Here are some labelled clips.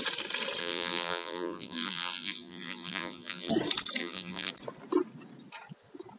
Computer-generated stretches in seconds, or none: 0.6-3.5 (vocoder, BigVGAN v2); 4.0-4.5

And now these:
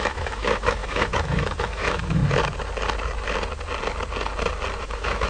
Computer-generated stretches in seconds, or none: 0.0-2.2 (autoencoder, DAC-VAE); 4.8-5.3

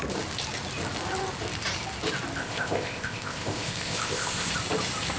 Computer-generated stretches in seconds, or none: 2.4-4.5 (codec, ZipCodec)

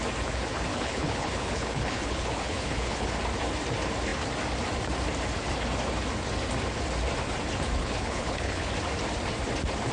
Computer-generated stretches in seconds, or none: 0.7-3.1 (codec, HILCodec); 7.8-8.7

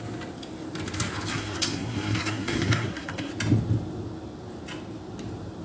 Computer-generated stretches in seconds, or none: 1.3-3.3 (codec, SNAC)

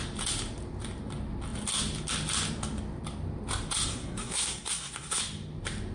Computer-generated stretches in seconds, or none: 3.9-5.2 (codec, SNAC)

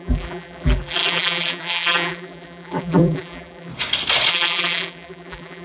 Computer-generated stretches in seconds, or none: 0.0-3.7 (vocoder, BigVGAN v2); 4.3-5.6